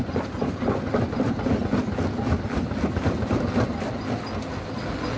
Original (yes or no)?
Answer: yes